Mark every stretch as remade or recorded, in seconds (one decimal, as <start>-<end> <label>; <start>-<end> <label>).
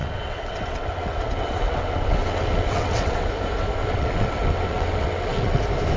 0.0-3.3 remade; 3.3-3.8 recorded; 3.8-5.6 remade; 5.6-6.0 recorded